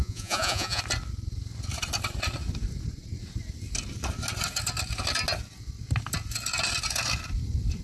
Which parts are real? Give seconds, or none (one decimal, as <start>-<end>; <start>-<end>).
0.8-7.8